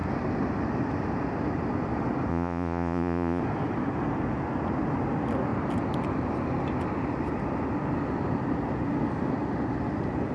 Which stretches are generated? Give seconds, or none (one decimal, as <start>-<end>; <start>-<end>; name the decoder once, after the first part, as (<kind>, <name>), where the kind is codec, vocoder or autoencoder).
2.3-3.4 (vocoder, Vocos)